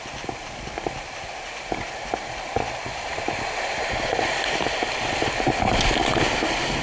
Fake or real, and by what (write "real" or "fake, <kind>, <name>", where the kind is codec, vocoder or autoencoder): real